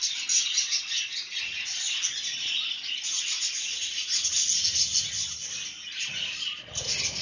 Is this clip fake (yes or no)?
no